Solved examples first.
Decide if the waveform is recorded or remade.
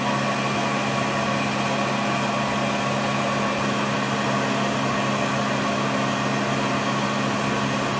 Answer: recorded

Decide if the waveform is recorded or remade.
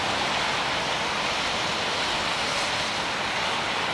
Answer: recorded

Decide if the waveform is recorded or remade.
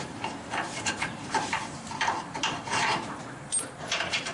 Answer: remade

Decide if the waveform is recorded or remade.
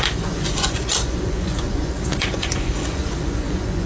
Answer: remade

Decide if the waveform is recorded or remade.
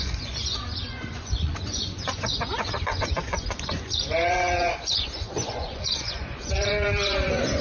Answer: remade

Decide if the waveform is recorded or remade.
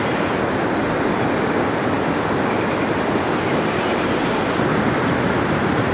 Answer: recorded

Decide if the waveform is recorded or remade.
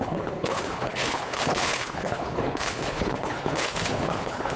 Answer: remade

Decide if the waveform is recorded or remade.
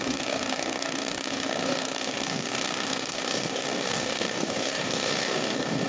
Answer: remade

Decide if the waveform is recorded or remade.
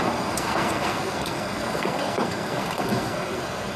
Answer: remade